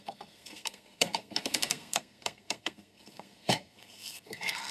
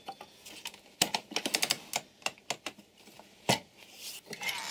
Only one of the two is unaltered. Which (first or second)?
second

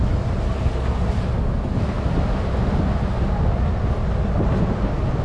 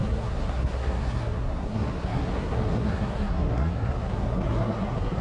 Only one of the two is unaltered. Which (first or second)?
first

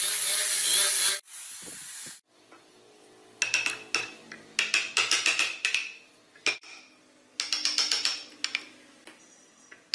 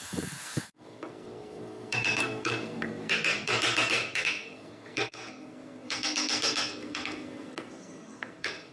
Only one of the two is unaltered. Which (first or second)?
first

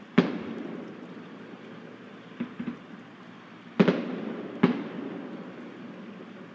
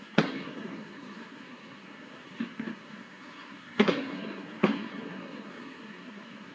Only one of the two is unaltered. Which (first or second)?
first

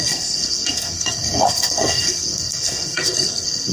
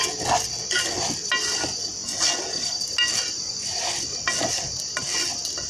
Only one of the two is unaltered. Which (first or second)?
second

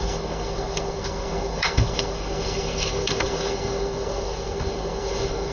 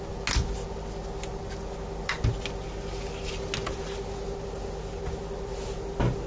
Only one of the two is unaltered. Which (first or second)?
second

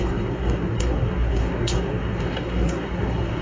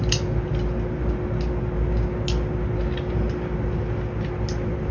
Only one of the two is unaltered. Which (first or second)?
second